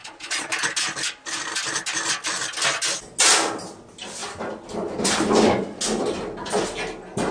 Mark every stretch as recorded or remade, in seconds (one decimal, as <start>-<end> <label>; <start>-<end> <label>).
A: 0.0-0.5 remade; 0.5-7.3 recorded